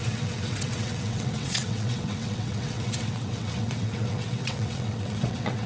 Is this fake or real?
fake